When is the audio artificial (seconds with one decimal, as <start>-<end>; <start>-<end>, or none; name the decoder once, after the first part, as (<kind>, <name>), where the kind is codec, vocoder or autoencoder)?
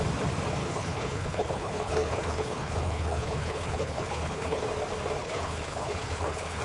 0.6-4.6 (codec, HILCodec); 5.2-6.6